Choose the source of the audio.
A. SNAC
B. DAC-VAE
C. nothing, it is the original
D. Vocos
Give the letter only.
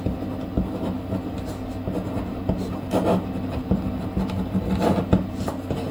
C